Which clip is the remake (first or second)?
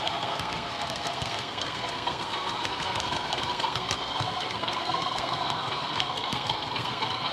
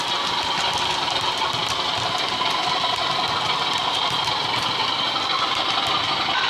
first